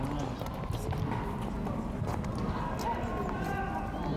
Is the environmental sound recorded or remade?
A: recorded